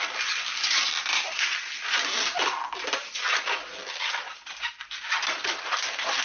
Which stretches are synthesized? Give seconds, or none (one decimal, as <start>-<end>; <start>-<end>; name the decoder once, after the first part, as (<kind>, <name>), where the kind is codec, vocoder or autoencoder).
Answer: none